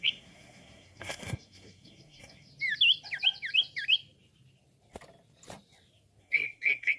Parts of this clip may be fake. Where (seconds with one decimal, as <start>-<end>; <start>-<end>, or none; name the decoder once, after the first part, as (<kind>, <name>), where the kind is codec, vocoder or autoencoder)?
0.0-2.5 (codec, SNAC); 6.2-7.0